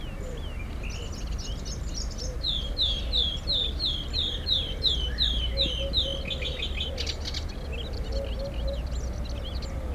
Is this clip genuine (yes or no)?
yes